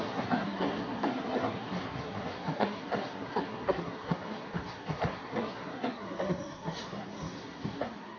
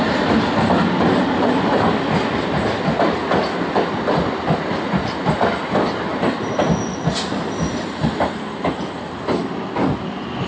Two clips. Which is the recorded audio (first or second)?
second